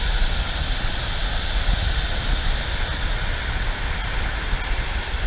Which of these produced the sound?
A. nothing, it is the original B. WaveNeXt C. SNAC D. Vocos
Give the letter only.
A